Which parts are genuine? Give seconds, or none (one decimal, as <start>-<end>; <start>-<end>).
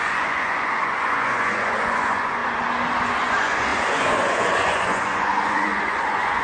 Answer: 2.4-3.0